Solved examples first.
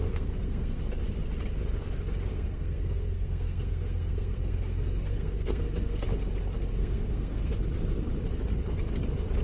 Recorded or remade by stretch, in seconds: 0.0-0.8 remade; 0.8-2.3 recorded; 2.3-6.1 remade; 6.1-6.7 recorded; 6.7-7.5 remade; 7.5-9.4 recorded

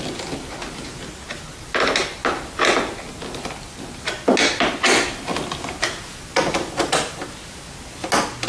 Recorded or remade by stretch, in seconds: 0.0-8.5 recorded

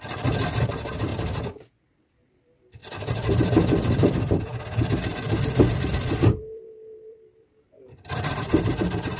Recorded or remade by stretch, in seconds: 0.0-1.1 remade; 1.1-2.3 recorded; 2.3-4.5 remade; 4.5-5.8 recorded; 5.8-9.2 remade

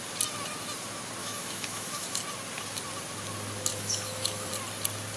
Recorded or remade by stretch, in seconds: 0.0-1.2 recorded; 1.2-2.2 remade; 2.2-3.7 recorded; 3.7-4.5 remade; 4.5-5.2 recorded

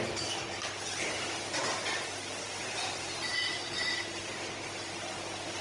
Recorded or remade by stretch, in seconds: 0.0-3.3 recorded; 3.3-4.2 remade; 4.2-5.6 recorded

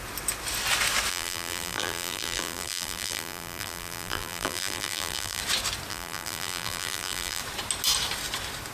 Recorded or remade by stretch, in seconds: 0.0-1.1 recorded; 1.1-5.4 remade; 5.4-5.9 recorded; 5.9-7.4 remade; 7.4-8.7 recorded

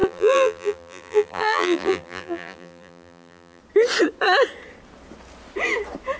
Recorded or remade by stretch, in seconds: 0.0-3.6 remade; 3.6-6.2 recorded

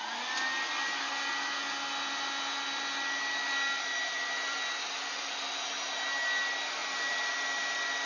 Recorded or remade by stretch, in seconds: 0.0-8.1 recorded